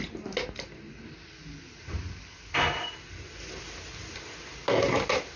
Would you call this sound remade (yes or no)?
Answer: no